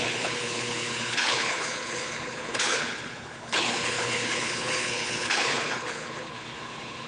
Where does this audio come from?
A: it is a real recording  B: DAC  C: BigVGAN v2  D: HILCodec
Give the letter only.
D